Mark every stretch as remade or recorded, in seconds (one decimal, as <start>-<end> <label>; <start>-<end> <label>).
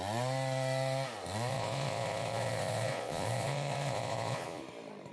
0.0-1.5 recorded; 1.5-4.6 remade; 4.6-5.1 recorded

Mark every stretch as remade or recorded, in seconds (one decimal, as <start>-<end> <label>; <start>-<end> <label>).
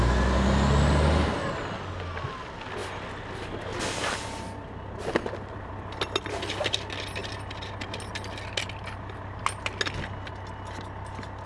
0.0-11.5 recorded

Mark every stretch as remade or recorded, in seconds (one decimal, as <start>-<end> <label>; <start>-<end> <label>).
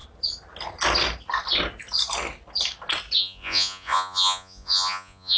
0.0-3.2 recorded; 3.2-5.4 remade